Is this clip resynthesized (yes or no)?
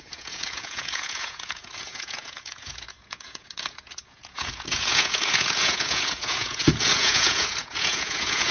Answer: yes